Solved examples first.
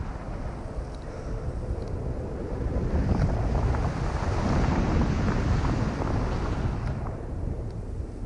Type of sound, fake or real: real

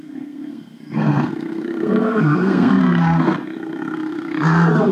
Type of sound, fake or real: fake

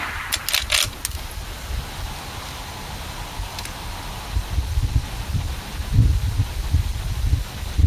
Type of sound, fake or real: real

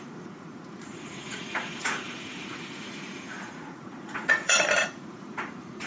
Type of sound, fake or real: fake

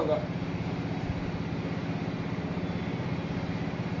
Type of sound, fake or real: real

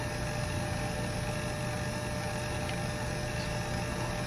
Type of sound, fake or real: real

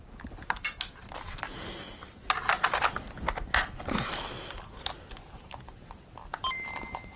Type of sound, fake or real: real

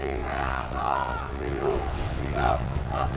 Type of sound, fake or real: fake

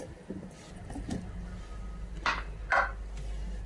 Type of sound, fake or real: real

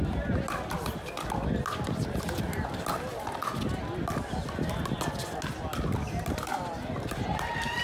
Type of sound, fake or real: real